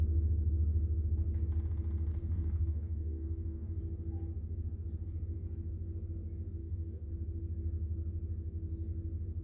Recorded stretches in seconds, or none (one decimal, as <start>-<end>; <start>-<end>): 0.0-2.2; 3.8-6.6; 7.1-9.4